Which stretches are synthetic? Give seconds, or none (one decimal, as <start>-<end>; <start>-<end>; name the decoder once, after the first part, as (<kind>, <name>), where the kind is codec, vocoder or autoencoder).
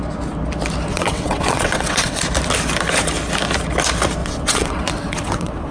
0.9-2.2 (vocoder, WaveNeXt); 4.2-5.7